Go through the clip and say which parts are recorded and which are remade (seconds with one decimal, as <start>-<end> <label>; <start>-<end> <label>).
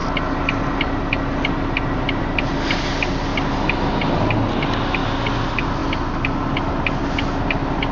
0.0-7.9 recorded